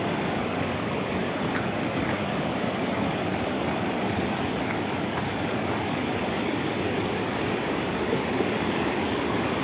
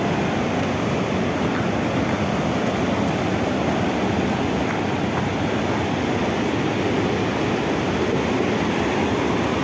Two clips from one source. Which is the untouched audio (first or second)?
second